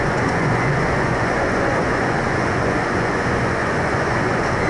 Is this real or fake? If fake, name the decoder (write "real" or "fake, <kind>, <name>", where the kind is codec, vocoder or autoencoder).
fake, vocoder, Vocos